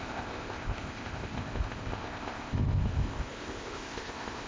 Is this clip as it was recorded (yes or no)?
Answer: no